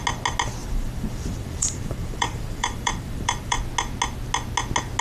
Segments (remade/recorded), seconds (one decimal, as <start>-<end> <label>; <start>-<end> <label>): 0.0-0.6 recorded; 0.6-3.6 remade; 3.6-5.0 recorded